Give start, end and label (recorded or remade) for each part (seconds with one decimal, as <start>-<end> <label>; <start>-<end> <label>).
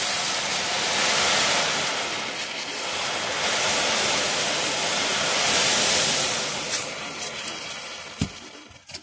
0.0-9.0 recorded